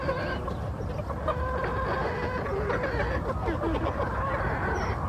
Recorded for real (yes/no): yes